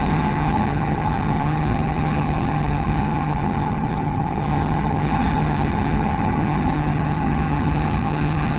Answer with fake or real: fake